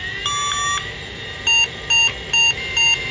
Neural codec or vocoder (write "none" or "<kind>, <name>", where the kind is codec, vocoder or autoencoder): none